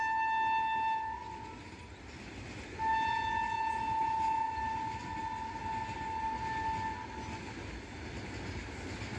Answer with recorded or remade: recorded